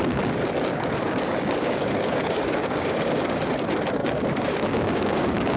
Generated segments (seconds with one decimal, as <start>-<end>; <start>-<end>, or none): 0.7-3.5; 4.0-5.6